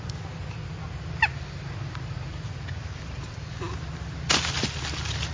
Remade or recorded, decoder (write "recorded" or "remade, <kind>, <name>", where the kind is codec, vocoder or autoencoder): recorded